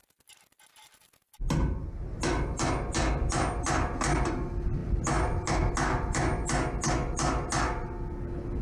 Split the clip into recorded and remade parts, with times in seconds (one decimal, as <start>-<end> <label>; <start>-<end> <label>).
0.0-8.6 recorded